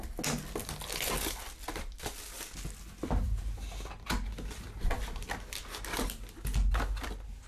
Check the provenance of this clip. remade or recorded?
recorded